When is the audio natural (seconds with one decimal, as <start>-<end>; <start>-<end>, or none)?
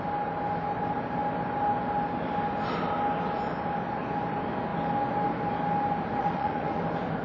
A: 0.0-6.2; 6.8-7.2